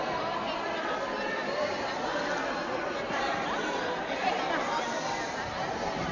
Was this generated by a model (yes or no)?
no